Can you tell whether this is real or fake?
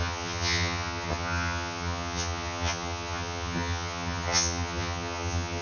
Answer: fake